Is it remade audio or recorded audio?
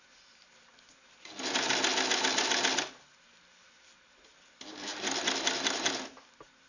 recorded